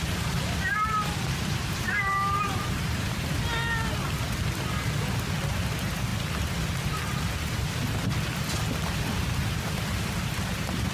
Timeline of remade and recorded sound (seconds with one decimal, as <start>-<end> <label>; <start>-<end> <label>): 0.0-3.5 remade; 3.5-5.5 recorded; 5.5-6.1 remade; 6.1-9.3 recorded; 9.3-10.9 remade